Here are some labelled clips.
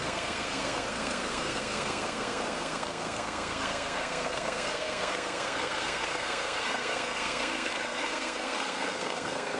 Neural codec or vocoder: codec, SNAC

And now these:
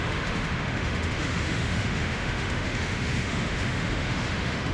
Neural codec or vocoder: autoencoder, DAC-VAE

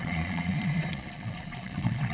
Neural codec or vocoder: vocoder, Vocos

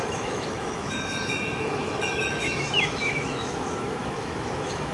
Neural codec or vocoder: autoencoder, DAC-VAE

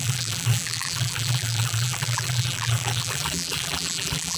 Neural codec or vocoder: vocoder, BigVGAN v2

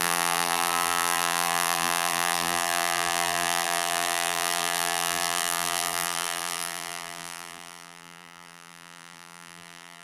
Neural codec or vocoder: vocoder, BigVGAN v2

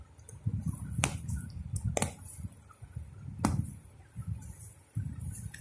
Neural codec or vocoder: none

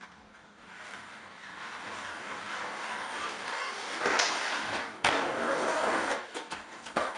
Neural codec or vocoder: codec, DAC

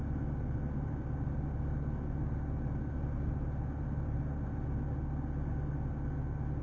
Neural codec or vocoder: none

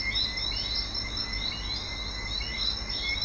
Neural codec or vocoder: none